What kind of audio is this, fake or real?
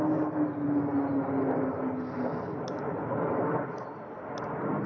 real